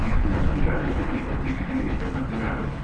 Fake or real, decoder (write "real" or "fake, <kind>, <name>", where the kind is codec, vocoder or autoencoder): fake, codec, HILCodec